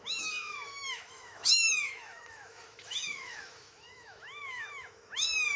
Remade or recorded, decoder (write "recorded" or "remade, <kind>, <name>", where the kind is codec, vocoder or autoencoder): remade, autoencoder, DAC-VAE